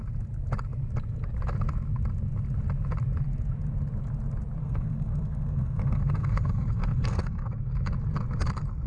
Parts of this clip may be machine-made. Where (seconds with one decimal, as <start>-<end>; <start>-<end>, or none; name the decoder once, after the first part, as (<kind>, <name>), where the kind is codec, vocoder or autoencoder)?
4.6-7.7 (codec, SNAC)